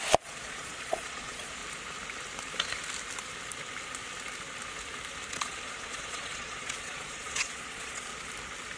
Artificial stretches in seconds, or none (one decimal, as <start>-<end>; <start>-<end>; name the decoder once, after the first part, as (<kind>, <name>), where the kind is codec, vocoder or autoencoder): 0.0-1.6 (vocoder, Vocos); 5.3-8.1